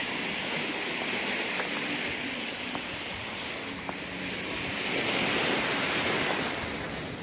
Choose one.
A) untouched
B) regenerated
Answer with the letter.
A